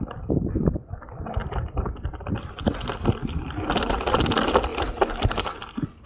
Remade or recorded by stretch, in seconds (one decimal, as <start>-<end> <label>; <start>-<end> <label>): 0.0-1.4 recorded; 1.4-3.6 remade; 3.6-4.7 recorded; 4.7-5.6 remade; 5.6-6.1 recorded